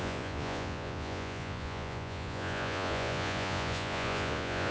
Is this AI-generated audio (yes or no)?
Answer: yes